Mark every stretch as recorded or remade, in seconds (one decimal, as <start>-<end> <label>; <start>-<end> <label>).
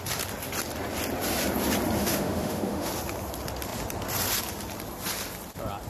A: 0.0-2.0 recorded; 2.0-2.9 remade; 2.9-5.9 recorded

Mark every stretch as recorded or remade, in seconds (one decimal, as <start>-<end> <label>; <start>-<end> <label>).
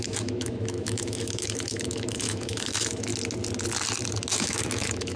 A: 0.0-3.1 remade; 3.1-4.3 recorded; 4.3-5.2 remade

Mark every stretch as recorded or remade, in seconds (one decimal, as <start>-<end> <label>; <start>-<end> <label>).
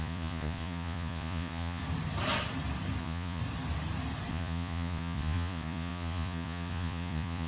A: 0.0-1.8 remade; 1.8-3.0 recorded; 3.0-3.4 remade; 3.4-4.3 recorded; 4.3-7.5 remade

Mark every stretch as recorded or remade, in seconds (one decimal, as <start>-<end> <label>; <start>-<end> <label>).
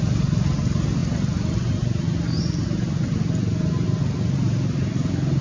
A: 0.0-5.4 recorded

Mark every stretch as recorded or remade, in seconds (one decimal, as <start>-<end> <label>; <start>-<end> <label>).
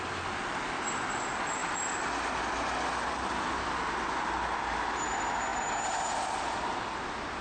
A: 0.0-7.4 recorded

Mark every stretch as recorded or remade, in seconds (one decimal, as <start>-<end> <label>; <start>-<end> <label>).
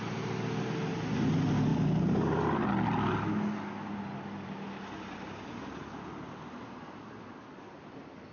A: 0.0-1.7 recorded; 1.7-2.7 remade; 2.7-8.3 recorded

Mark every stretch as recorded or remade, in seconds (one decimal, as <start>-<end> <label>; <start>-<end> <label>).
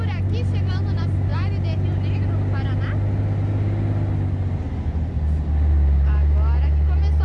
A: 0.0-7.2 recorded